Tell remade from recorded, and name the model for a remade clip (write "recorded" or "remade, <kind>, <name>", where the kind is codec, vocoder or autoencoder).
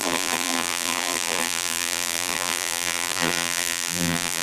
remade, vocoder, BigVGAN v2